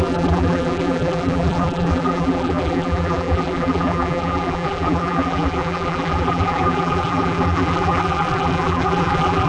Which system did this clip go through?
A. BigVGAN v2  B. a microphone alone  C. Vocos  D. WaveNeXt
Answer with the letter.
A